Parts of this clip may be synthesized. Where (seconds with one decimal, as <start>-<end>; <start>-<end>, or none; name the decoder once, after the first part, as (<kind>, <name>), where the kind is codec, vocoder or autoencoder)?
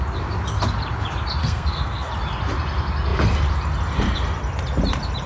1.4-2.1 (codec, SNAC)